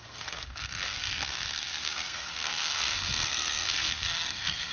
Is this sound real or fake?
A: fake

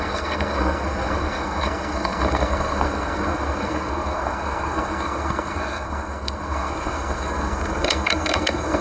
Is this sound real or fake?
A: fake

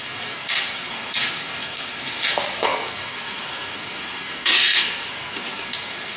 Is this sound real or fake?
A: fake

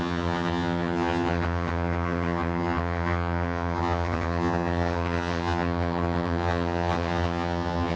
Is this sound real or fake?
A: fake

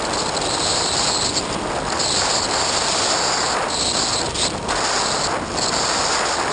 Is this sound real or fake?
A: real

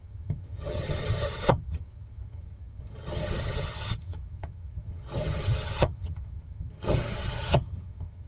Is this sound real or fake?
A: fake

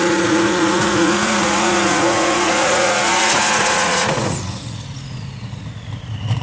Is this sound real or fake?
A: fake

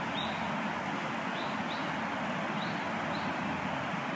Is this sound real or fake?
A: real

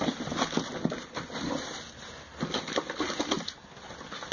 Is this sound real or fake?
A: real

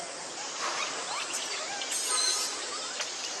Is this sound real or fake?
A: fake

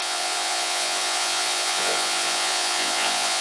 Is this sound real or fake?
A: fake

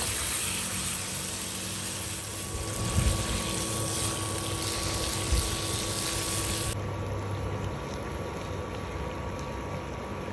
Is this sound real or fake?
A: real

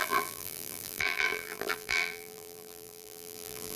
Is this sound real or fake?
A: fake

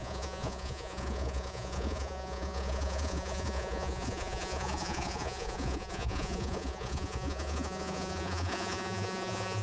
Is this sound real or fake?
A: fake